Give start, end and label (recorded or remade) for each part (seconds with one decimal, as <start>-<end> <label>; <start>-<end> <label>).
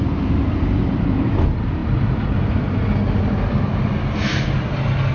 0.0-5.1 recorded